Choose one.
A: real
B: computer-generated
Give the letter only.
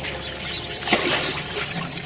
B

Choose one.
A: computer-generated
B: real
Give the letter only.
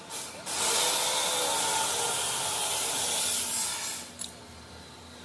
B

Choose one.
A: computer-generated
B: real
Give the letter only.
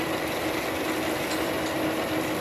B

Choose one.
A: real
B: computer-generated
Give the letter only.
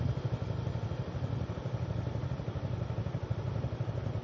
A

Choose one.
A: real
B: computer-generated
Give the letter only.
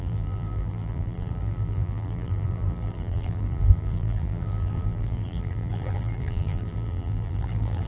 B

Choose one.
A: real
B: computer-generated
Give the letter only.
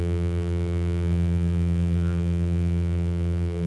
B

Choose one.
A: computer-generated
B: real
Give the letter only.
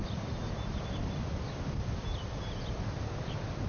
B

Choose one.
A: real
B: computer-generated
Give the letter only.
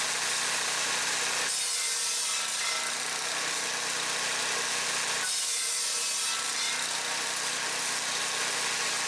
A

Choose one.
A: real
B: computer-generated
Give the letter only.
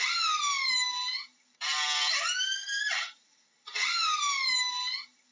A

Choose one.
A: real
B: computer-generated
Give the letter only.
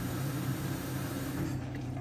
B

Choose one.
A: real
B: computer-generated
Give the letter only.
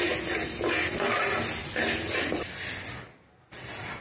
A